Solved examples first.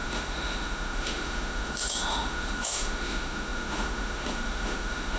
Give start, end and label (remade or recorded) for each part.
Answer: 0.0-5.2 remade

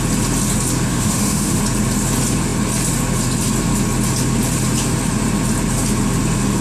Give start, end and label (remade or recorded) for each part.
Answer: 0.0-0.9 recorded; 0.9-1.6 remade; 1.6-6.6 recorded

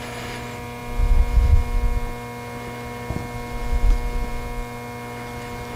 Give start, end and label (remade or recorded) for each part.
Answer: 0.0-5.8 recorded

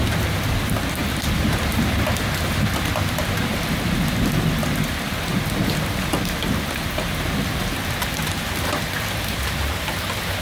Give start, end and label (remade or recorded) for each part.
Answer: 0.0-10.4 recorded

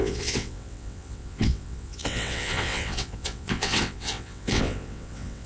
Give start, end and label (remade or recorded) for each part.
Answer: 0.0-5.5 remade

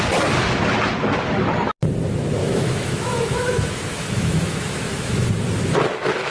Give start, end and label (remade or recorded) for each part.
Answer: 0.0-2.4 recorded; 2.4-5.3 remade; 5.3-6.3 recorded

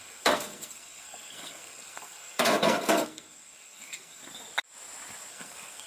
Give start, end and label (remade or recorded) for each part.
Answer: 0.0-4.2 remade; 4.2-5.3 recorded; 5.3-5.9 remade